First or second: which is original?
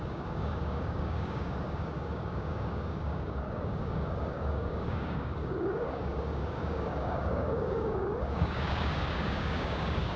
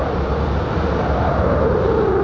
second